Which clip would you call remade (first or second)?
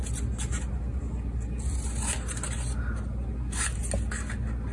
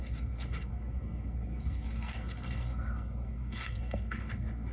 second